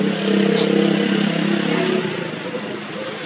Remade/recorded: recorded